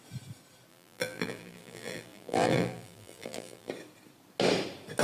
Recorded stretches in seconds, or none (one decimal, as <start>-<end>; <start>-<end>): 0.0-0.7; 3.7-5.0